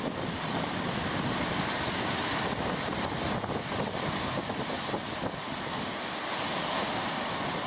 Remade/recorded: recorded